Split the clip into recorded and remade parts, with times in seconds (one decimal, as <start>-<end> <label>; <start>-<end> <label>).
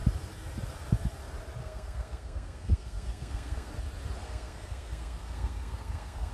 0.0-1.6 recorded; 1.6-3.7 remade; 3.7-4.2 recorded; 4.2-6.3 remade